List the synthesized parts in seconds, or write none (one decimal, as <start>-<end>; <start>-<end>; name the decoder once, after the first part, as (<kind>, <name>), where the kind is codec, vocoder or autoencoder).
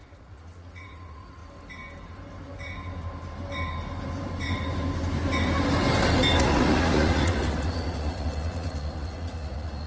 0.0-1.4 (vocoder, Vocos); 6.4-9.9